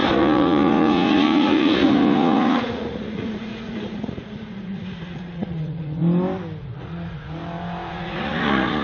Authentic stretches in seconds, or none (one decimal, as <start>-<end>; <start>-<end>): 6.0-6.6; 7.4-7.9

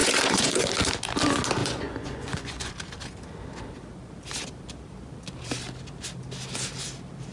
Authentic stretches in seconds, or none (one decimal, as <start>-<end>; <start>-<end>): 0.7-1.6; 2.7-7.3

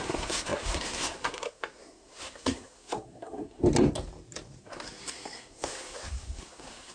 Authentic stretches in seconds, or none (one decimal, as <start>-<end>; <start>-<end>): 3.6-4.6